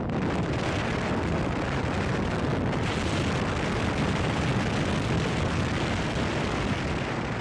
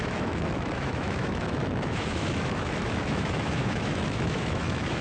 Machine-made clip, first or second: second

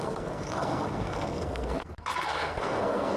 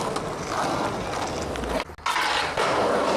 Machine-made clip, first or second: first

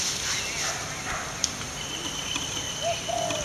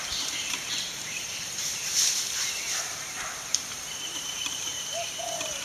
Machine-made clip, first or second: second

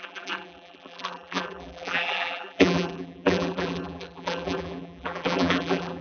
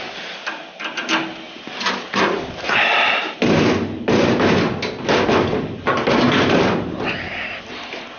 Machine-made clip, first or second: first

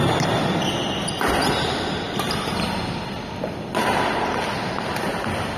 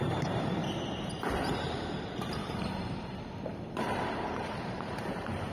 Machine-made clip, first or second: second